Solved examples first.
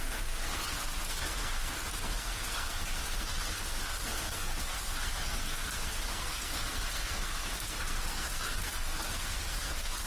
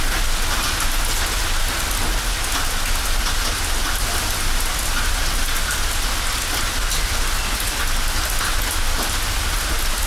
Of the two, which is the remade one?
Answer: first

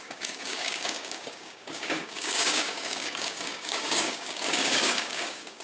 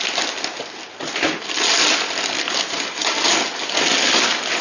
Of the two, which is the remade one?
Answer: first